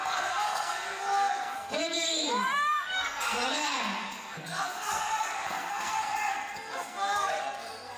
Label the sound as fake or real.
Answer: fake